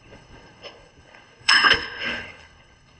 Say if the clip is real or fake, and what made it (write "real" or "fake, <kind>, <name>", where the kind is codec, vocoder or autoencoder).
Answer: fake, codec, HILCodec